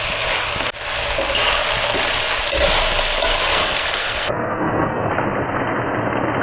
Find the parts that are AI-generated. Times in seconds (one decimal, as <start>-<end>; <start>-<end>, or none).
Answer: 3.3-5.1